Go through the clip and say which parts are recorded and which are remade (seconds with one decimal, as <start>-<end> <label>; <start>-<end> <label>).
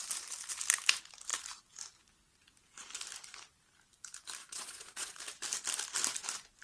0.0-4.4 recorded; 4.4-5.2 remade; 5.2-6.6 recorded